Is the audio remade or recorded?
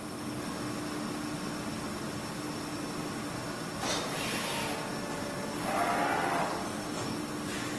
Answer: recorded